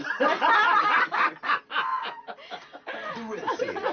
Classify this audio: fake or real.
fake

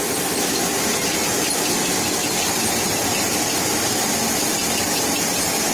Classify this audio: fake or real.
real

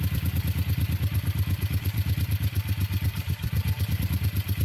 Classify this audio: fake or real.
fake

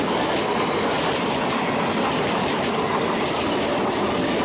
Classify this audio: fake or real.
real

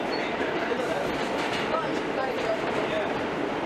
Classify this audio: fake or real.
real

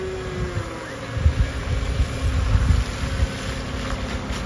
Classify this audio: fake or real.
real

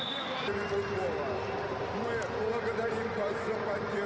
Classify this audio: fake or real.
real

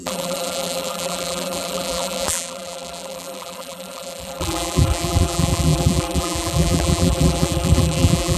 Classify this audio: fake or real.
fake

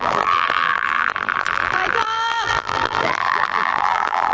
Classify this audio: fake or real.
fake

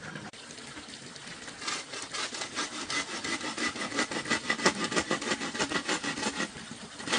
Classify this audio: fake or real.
real